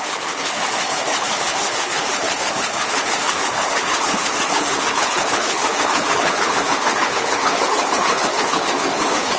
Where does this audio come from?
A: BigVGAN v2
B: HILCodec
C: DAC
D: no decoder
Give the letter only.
B